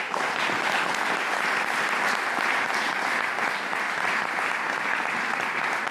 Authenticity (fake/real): real